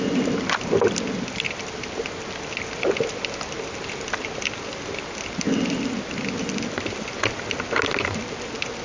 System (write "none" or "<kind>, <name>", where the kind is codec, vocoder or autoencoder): none